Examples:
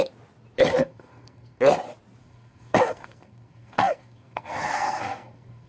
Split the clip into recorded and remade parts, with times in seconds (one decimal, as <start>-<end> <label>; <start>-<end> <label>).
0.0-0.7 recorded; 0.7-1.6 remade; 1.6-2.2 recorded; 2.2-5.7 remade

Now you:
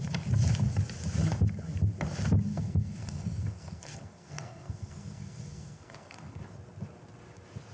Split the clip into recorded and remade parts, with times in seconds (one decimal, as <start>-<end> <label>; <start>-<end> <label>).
0.0-2.5 recorded; 2.5-6.4 remade; 6.4-7.7 recorded

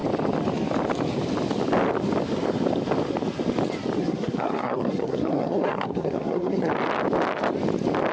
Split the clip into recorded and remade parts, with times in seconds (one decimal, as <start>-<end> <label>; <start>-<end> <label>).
0.0-4.0 recorded; 4.0-6.7 remade; 6.7-8.1 recorded